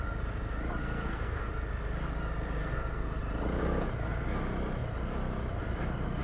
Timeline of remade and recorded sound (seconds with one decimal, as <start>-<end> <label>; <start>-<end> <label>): 0.0-0.8 recorded; 0.8-1.5 remade; 1.5-2.6 recorded; 2.6-3.2 remade; 3.2-6.2 recorded